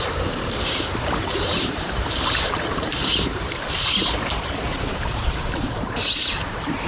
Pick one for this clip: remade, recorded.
remade